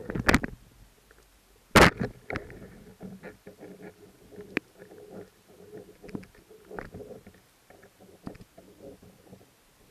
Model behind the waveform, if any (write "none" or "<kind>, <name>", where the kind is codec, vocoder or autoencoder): none